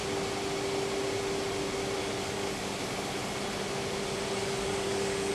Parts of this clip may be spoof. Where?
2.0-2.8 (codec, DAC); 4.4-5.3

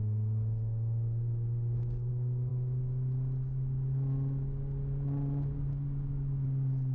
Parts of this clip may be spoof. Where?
none

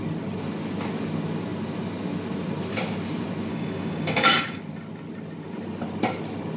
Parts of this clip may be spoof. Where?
3.5-4.6 (codec, DAC)

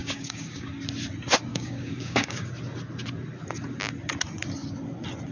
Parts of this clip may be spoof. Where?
0.0-0.7 (codec, DAC); 1.5-2.5

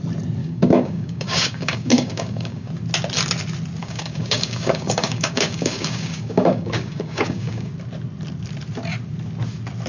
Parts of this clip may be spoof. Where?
0.4-2.7 (codec, DAC); 3.8-7.7

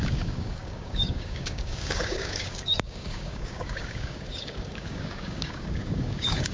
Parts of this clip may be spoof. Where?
0.0-6.5 (codec, DAC)

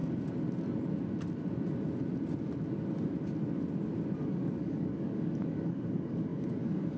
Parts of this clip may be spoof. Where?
4.2-7.0 (codec, DAC)

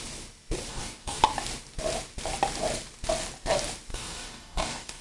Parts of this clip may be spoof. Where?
0.7-1.2 (codec, DAC); 3.9-5.0